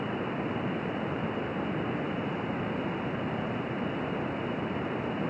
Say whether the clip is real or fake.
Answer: real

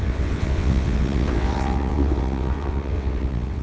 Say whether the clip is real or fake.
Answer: fake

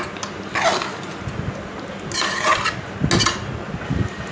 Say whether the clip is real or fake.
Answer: real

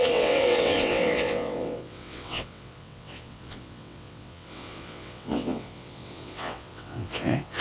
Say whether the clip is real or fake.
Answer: fake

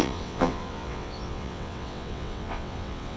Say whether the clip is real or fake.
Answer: fake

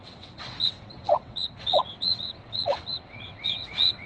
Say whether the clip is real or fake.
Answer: fake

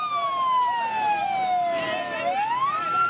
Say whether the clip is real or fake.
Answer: real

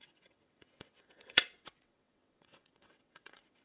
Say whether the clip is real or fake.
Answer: fake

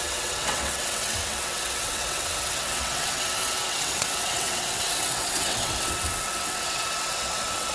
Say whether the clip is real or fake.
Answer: fake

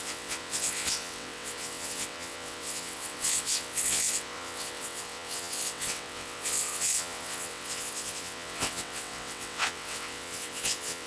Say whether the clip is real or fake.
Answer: fake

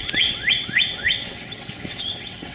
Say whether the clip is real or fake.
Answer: fake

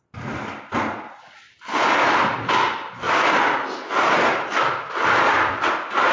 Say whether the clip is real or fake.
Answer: real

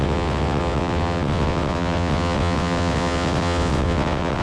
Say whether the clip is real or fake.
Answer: fake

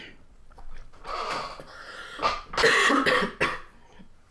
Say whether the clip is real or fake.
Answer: real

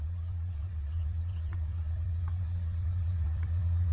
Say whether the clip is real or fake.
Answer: fake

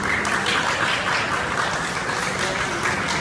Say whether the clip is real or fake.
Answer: real